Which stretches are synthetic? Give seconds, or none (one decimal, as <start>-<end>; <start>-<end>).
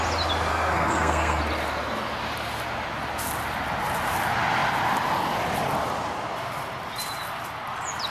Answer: 0.5-1.4